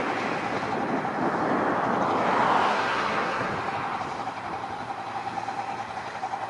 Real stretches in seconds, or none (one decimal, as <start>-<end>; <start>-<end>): 0.0-2.7; 3.5-6.5